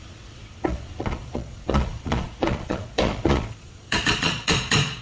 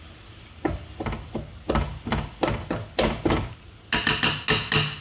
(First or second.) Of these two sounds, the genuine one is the second